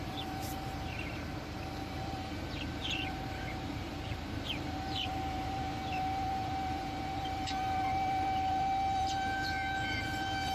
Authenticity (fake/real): fake